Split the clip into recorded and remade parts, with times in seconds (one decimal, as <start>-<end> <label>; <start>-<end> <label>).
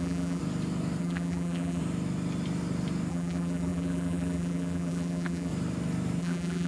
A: 0.0-0.4 remade; 0.4-1.0 recorded; 1.0-1.8 remade; 1.8-3.1 recorded; 3.1-5.5 remade; 5.5-6.2 recorded; 6.2-6.7 remade